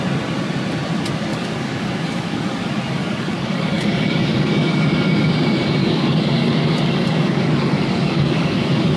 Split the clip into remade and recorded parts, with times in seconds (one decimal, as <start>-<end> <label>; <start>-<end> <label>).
0.0-1.3 recorded; 1.3-2.6 remade; 2.6-3.0 recorded; 3.0-5.3 remade; 5.3-5.8 recorded; 5.8-9.0 remade